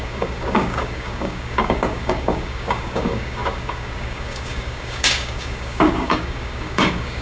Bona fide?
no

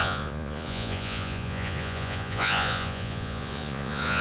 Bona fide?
no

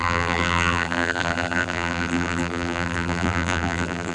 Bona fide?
no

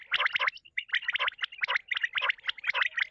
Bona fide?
yes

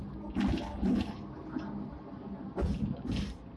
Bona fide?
yes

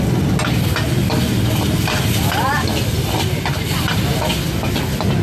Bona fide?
yes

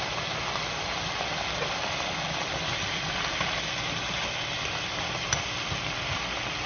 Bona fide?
yes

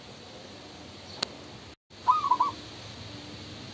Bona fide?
yes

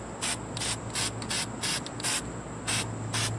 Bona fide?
yes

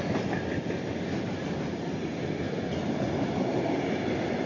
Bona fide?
yes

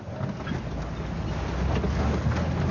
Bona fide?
yes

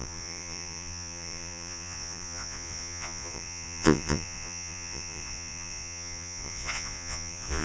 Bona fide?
no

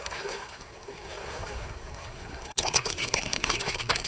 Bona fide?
no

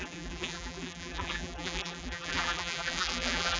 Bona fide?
no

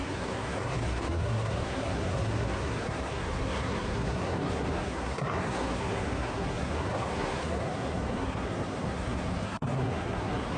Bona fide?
no